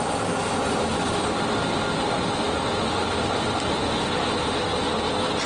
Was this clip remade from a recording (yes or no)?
no